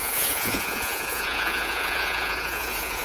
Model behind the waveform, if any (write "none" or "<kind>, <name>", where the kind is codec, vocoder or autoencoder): vocoder, Vocos